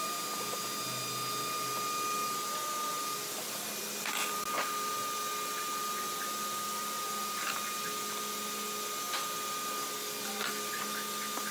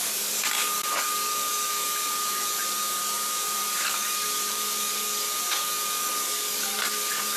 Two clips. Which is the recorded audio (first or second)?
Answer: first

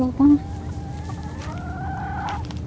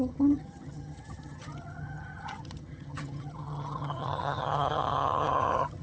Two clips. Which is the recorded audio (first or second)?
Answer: first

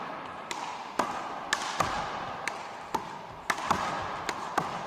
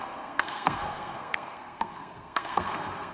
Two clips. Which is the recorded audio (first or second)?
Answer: first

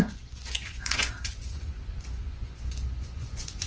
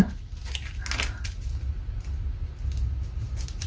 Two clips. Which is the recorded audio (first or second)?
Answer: second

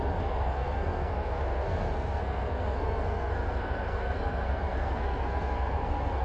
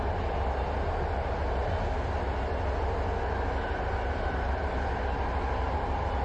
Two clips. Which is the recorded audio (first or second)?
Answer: second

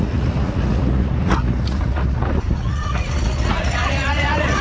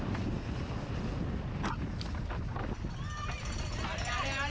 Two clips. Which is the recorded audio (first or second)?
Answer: second